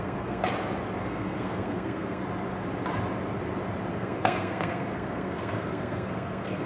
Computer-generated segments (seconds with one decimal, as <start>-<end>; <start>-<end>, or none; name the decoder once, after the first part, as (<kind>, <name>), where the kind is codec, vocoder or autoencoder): 0.0-0.4 (codec, SNAC); 1.0-2.2; 3.9-6.7